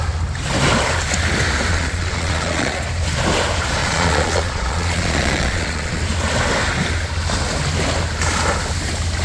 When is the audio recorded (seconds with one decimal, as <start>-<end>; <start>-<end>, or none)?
0.0-1.7; 2.8-3.8; 6.0-9.2